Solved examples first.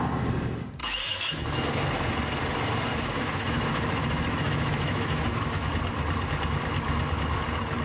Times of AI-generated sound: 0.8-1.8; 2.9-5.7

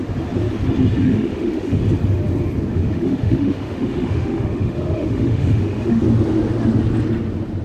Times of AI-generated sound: 1.0-1.8; 2.7-6.0

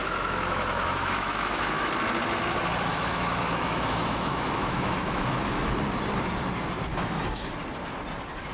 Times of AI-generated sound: 0.0-1.9; 2.9-5.7; 6.9-7.5

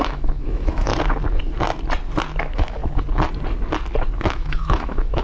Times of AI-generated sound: 0.0-0.9; 2.4-2.8; 4.3-5.2